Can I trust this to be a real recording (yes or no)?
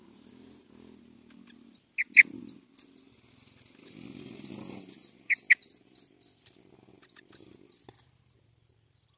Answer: yes